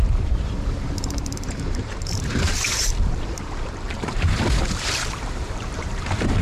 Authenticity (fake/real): fake